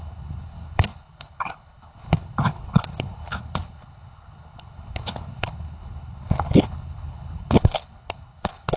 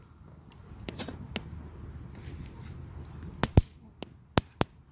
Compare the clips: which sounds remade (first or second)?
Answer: first